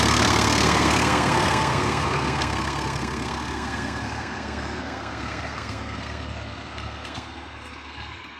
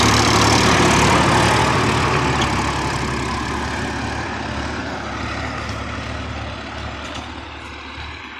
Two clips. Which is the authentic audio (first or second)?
second